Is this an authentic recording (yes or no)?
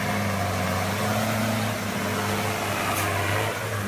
yes